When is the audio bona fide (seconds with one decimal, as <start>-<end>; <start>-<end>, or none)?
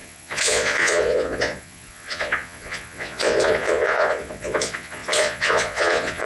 none